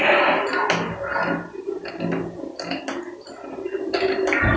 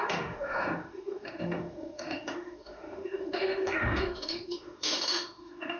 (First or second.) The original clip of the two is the first